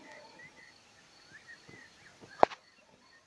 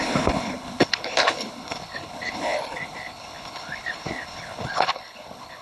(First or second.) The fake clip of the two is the second